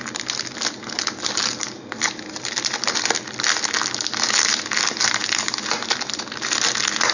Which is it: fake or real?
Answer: real